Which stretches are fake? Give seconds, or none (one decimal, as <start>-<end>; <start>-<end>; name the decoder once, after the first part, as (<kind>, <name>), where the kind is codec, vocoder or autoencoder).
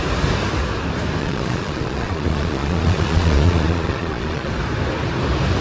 1.2-4.5 (vocoder, Vocos)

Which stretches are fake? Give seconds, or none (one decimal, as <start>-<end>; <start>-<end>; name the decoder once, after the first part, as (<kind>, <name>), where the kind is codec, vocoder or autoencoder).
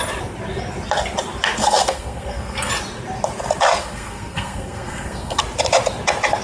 1.6-2.7 (codec, SNAC); 3.8-5.4